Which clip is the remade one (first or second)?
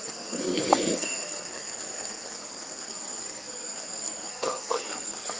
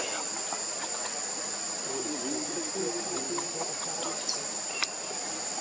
first